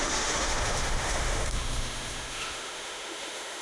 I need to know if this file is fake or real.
fake